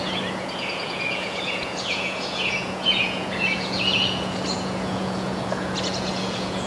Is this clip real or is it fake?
fake